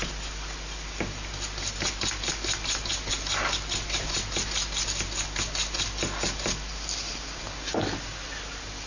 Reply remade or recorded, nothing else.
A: recorded